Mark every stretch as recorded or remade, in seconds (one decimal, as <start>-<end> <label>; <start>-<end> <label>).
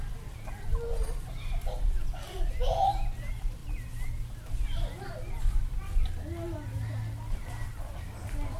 0.0-8.6 recorded